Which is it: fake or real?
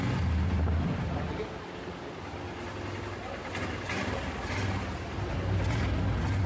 real